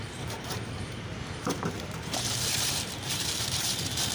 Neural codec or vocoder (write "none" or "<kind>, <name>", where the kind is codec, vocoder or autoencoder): vocoder, BigVGAN v2